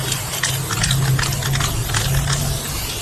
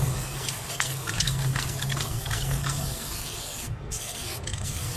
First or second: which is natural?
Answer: first